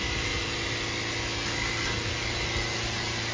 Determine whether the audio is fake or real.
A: real